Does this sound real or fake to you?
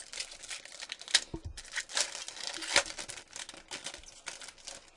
real